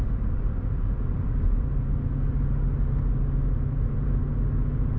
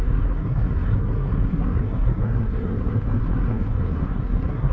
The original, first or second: first